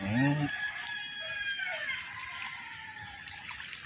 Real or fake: real